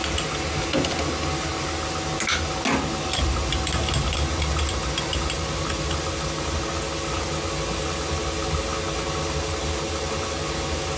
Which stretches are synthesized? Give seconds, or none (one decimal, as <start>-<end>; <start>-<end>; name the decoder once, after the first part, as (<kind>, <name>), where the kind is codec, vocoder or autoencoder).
none